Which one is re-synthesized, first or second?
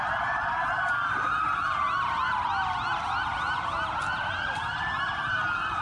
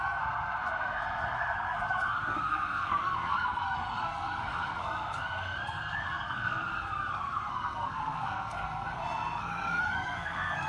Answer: second